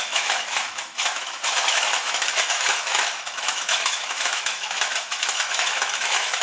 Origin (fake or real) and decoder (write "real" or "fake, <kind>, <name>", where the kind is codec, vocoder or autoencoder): fake, autoencoder, DAC-VAE